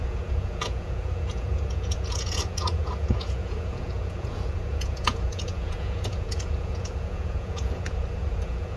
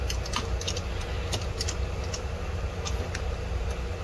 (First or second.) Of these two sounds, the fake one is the first